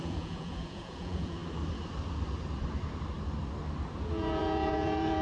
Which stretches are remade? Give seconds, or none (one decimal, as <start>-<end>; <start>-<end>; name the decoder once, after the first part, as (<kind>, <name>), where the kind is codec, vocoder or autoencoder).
0.0-1.4 (vocoder, Vocos); 4.0-5.2